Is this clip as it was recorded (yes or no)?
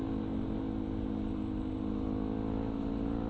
yes